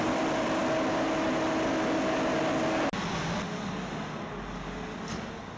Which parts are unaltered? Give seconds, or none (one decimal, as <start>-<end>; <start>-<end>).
0.0-5.6